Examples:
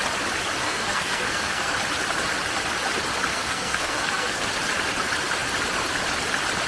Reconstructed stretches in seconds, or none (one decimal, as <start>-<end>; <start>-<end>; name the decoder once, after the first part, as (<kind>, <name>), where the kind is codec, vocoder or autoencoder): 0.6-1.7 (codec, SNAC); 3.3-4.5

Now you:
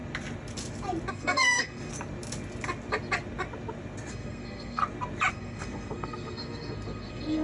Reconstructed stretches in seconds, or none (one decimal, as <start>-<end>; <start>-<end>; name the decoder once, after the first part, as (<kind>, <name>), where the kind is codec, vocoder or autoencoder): 1.1-1.9 (codec, SNAC); 4.1-4.8; 5.3-7.4

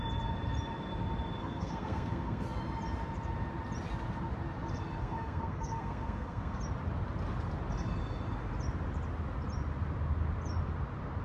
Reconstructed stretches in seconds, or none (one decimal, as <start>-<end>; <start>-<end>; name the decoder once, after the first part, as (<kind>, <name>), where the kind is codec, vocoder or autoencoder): 1.4-2.6 (codec, SNAC); 5.0-6.6